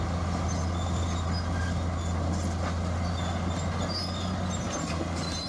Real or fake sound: real